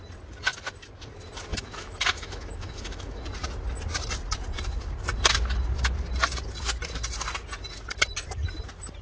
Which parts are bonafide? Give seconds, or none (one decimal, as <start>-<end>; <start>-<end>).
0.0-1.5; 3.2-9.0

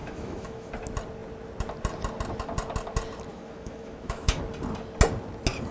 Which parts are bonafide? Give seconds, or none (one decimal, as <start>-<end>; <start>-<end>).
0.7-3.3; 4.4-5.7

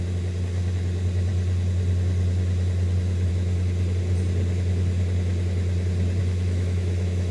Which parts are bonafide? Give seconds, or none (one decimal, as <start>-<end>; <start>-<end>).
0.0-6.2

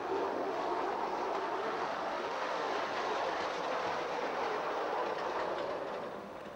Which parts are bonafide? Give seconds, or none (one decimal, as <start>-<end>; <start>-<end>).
0.8-1.4; 2.7-6.1